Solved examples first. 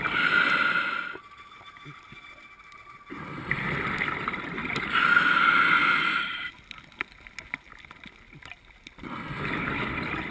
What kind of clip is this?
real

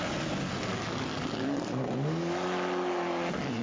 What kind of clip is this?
real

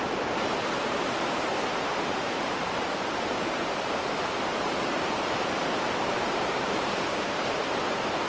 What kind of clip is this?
fake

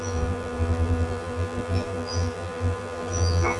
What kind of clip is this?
fake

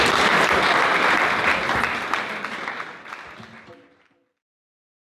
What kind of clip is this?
real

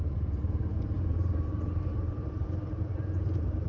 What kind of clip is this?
fake